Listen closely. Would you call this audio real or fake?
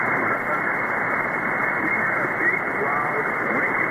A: fake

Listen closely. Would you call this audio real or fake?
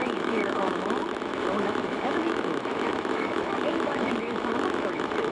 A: fake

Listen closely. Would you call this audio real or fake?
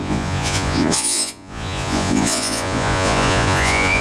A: fake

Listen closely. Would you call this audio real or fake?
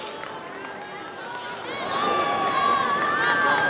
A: real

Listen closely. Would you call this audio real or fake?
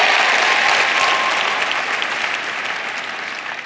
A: real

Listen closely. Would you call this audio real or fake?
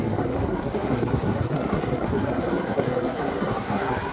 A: fake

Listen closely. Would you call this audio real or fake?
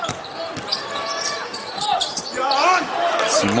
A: real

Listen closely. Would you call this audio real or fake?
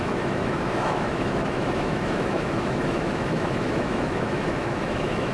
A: fake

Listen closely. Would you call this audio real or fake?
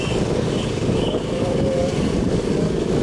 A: fake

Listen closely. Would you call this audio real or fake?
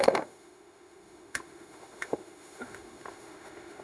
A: fake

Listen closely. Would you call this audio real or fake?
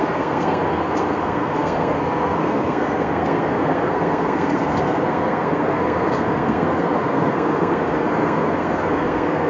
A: fake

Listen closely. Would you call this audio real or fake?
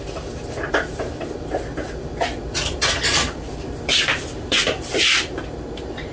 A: fake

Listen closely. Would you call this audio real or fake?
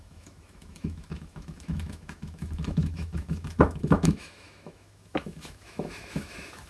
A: fake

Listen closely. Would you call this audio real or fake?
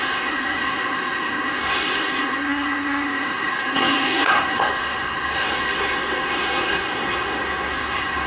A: fake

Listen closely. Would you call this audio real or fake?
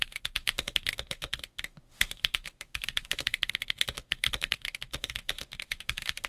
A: fake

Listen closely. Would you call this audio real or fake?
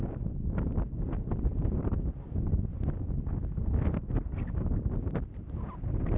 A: real